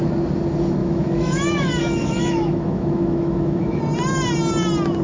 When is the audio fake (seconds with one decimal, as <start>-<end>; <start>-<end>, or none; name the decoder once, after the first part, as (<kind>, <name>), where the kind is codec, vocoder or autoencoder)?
0.8-3.8 (autoencoder, DAC-VAE)